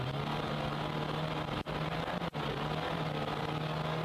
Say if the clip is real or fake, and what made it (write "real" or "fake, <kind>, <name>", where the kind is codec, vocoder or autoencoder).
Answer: real